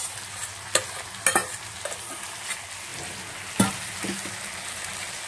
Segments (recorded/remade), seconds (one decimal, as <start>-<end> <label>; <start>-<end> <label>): 0.0-5.3 recorded